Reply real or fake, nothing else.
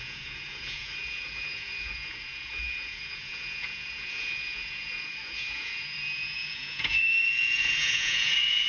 fake